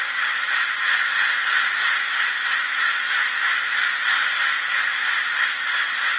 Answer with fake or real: real